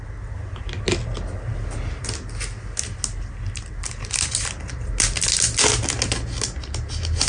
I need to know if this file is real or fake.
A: real